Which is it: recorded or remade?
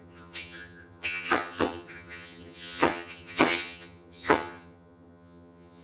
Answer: remade